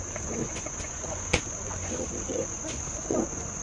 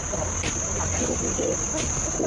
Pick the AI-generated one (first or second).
first